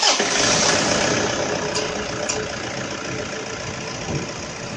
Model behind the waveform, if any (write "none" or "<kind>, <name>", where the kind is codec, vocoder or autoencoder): none